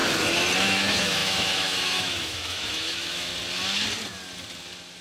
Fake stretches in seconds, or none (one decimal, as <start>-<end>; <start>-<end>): 0.6-3.3